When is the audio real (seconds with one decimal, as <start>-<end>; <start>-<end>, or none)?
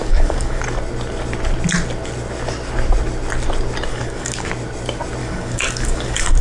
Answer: 0.6-3.9; 4.5-5.2